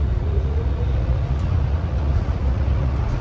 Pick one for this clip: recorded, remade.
remade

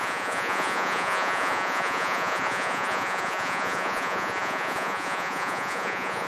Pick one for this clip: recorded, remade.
remade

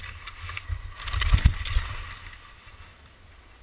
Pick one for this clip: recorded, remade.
recorded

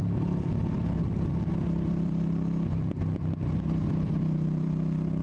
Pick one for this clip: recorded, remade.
remade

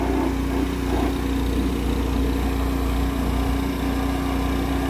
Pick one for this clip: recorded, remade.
recorded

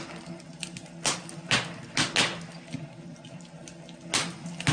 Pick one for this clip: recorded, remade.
recorded